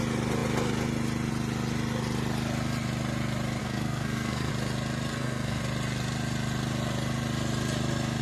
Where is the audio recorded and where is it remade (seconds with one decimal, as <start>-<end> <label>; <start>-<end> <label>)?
0.0-3.6 recorded; 3.6-4.5 remade; 4.5-5.1 recorded; 5.1-5.6 remade; 5.6-8.2 recorded